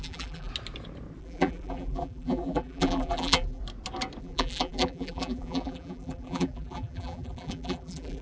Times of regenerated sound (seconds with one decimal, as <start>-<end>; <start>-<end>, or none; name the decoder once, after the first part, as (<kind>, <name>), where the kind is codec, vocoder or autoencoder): 0.0-0.5 (vocoder, BigVGAN v2); 1.2-3.6; 4.2-8.2